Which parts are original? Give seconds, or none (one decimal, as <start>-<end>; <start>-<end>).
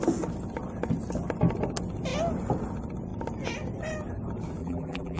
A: 0.0-4.6